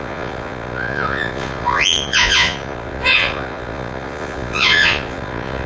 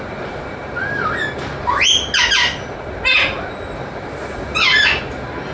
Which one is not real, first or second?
first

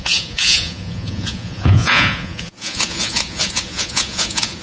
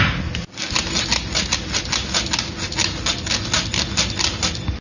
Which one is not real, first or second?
first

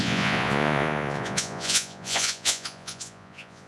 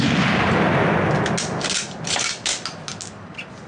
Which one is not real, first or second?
first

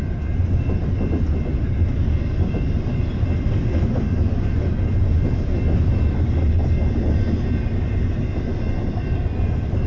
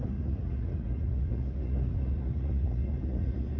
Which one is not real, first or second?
second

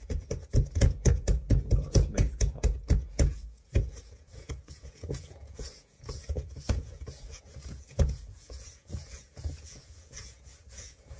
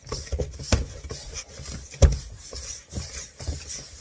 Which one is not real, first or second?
first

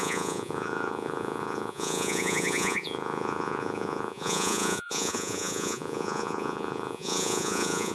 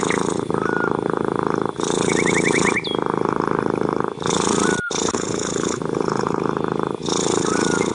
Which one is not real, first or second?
first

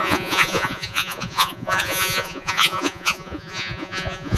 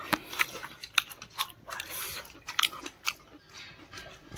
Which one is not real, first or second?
first